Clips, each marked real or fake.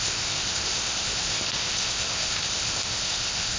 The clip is fake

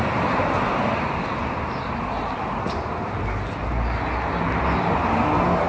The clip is real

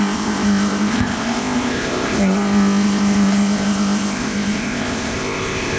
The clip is fake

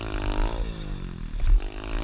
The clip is real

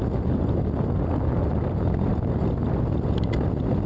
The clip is real